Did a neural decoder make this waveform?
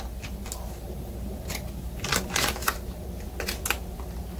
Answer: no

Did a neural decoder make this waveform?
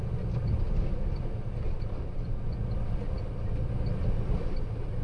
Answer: no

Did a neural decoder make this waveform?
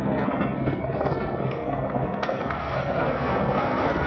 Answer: yes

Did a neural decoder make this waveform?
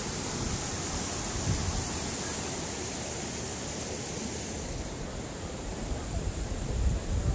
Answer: no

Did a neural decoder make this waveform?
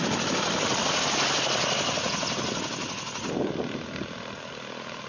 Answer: no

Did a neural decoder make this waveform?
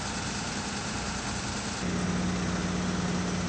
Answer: no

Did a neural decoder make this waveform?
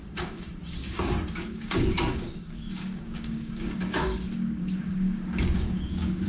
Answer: yes